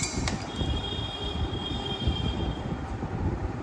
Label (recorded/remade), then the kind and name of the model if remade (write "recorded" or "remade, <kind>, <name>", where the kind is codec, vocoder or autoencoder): remade, vocoder, BigVGAN v2